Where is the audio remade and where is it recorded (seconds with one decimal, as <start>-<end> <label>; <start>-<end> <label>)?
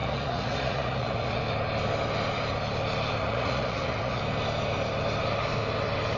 0.0-1.4 remade; 1.4-3.2 recorded; 3.2-4.2 remade; 4.2-6.2 recorded